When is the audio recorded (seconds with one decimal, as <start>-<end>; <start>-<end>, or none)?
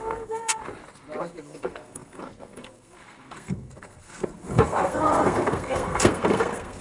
0.6-1.2